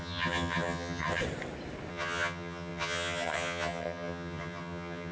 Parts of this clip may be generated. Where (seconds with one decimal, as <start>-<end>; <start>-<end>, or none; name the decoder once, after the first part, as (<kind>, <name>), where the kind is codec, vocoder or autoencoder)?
0.0-1.2 (vocoder, HiFi-GAN); 1.9-5.1